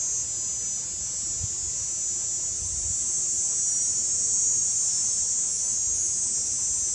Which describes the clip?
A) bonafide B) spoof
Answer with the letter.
A